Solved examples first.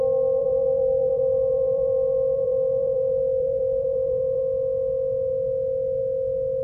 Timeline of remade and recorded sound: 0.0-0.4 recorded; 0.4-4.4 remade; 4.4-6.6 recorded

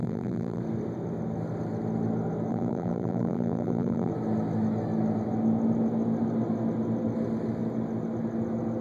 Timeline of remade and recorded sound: 0.0-0.6 remade; 0.6-2.5 recorded; 2.5-4.1 remade; 4.1-8.8 recorded

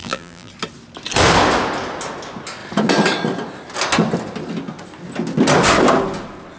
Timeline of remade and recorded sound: 0.0-0.5 remade; 0.5-6.6 recorded

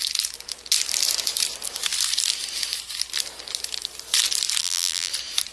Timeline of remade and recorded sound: 0.0-4.6 recorded; 4.6-5.1 remade; 5.1-5.5 recorded

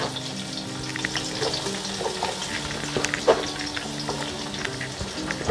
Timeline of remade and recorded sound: 0.0-5.5 recorded

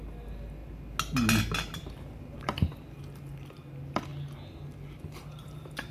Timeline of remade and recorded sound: 0.0-0.6 remade; 0.6-2.3 recorded; 2.3-4.1 remade; 4.1-5.0 recorded; 5.0-5.9 remade

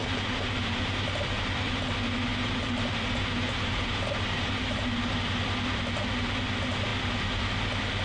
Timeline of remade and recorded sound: 0.0-1.8 remade; 1.8-2.3 recorded; 2.3-5.2 remade; 5.2-8.0 recorded

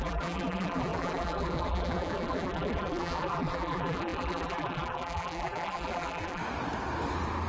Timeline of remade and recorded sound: 0.0-6.4 remade; 6.4-7.5 recorded